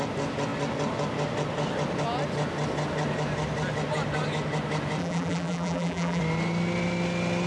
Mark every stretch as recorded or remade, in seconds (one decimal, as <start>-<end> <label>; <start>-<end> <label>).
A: 0.0-5.0 recorded; 5.0-6.2 remade; 6.2-7.5 recorded